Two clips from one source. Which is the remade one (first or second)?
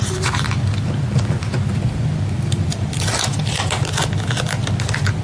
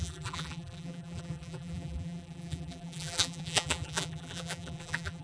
second